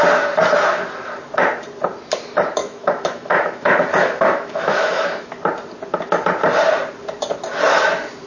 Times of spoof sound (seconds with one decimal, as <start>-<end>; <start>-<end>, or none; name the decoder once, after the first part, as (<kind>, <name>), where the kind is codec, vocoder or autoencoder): 2.6-5.3 (autoencoder, DAC-VAE)